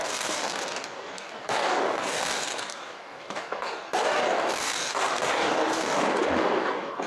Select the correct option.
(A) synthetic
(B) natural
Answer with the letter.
A